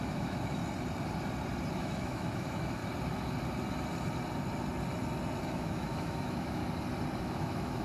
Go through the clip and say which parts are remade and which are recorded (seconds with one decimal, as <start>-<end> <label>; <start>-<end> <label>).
0.0-0.6 remade; 0.6-1.7 recorded; 1.7-2.8 remade; 2.8-5.4 recorded; 5.4-6.6 remade; 6.6-7.2 recorded; 7.2-7.8 remade